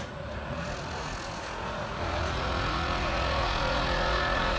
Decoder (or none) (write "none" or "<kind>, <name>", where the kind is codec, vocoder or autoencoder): vocoder, Vocos